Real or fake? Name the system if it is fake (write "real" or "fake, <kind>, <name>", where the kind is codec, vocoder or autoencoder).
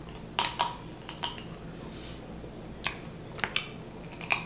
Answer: real